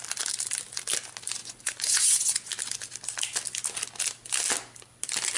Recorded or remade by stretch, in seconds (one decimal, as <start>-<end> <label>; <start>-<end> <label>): 0.0-1.4 recorded; 1.4-2.5 remade; 2.5-5.4 recorded